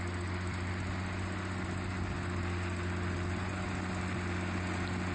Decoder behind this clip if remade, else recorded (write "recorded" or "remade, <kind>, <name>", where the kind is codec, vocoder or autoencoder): recorded